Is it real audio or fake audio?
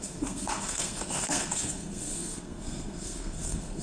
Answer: fake